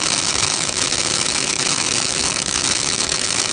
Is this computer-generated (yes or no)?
yes